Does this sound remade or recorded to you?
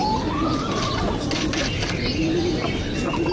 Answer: recorded